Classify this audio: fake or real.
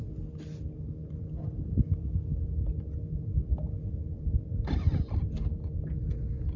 real